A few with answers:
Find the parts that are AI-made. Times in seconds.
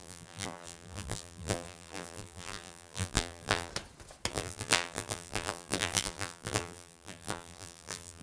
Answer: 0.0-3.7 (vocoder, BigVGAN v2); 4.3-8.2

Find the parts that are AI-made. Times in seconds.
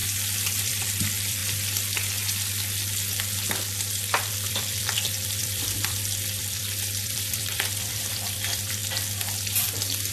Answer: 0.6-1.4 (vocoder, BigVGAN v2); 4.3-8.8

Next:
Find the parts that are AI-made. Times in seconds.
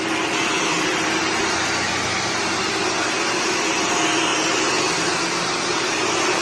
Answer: none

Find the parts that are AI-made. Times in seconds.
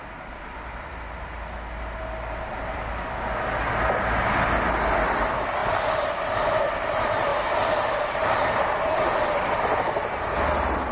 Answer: 5.6-6.2 (vocoder, BigVGAN v2); 7.3-9.6